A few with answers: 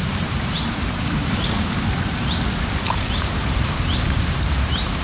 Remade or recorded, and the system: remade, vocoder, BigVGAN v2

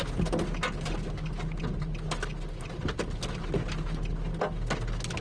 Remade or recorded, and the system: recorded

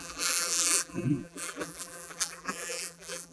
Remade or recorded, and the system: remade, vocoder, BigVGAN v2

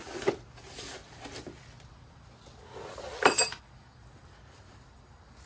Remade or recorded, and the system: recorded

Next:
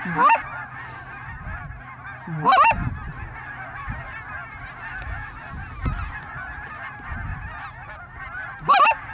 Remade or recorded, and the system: recorded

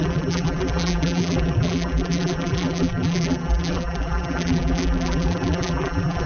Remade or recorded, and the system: remade, vocoder, BigVGAN v2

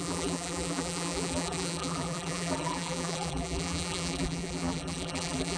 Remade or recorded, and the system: remade, vocoder, BigVGAN v2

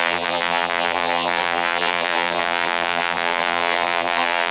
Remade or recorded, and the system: remade, vocoder, BigVGAN v2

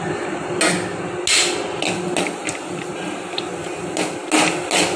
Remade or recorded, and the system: recorded